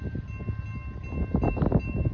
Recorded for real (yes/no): yes